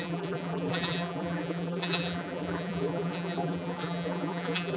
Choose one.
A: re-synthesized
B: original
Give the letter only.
A